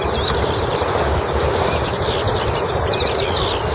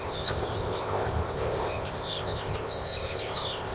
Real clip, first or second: first